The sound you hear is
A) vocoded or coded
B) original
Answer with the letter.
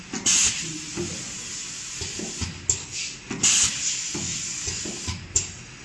B